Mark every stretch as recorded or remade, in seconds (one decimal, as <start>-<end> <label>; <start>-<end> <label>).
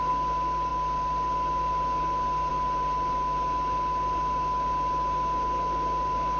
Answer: 0.0-6.4 recorded